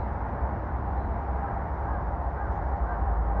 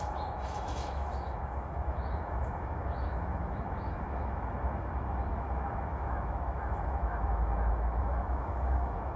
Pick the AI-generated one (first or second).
second